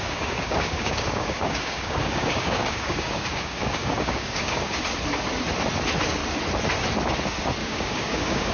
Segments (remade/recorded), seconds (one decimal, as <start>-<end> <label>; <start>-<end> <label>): 0.0-4.8 remade; 4.8-7.6 recorded; 7.6-8.5 remade